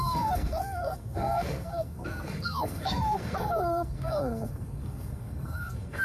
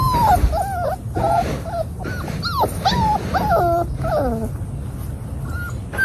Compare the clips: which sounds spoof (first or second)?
first